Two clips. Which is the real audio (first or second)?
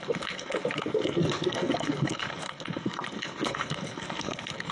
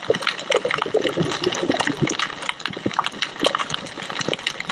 second